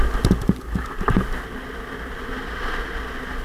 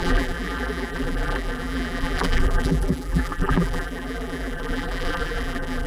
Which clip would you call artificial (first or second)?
second